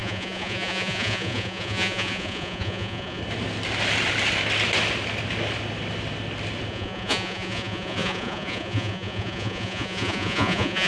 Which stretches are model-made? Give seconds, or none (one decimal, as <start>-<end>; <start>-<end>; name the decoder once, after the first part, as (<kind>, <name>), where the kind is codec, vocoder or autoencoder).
0.0-3.2 (vocoder, Vocos); 6.7-10.9